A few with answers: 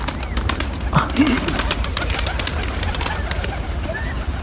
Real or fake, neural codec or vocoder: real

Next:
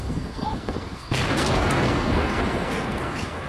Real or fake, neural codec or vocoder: fake, codec, SNAC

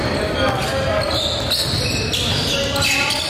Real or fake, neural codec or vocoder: real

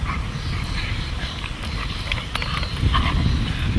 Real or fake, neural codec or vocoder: real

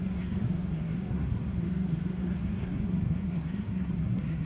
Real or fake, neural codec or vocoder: fake, codec, SNAC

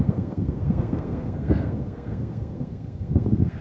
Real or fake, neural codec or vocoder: fake, codec, SNAC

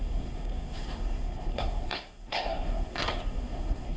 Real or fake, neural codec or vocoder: fake, codec, SNAC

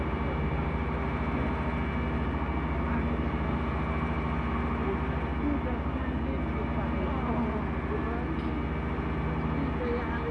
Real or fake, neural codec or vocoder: real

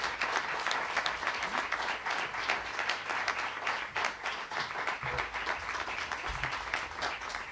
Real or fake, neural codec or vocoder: real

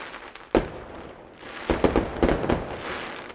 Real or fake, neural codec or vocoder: real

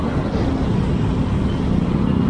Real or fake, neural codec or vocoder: real